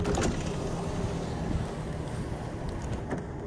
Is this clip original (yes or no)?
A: yes